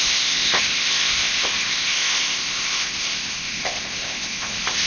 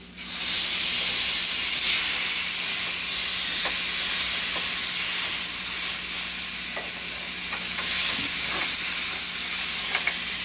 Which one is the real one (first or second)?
second